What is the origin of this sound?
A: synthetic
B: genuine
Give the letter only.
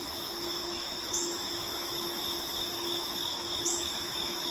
A